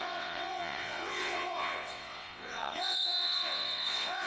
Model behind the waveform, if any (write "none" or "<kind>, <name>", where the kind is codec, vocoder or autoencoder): vocoder, WaveNeXt